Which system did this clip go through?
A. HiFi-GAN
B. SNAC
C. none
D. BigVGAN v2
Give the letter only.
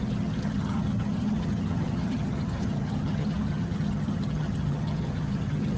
A